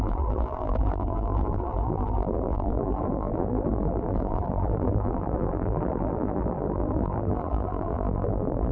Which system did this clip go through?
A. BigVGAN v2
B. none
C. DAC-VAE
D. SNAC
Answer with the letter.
A